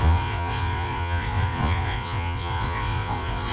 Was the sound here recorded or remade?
remade